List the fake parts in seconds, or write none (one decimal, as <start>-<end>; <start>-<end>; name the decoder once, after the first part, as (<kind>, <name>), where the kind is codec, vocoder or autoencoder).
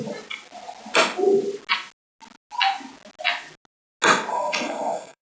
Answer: 4.3-5.2 (codec, SNAC)